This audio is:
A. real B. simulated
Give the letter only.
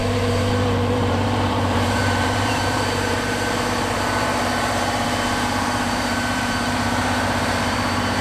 B